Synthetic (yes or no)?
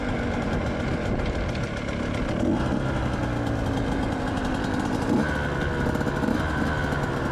no